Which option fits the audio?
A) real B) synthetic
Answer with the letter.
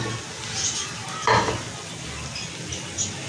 A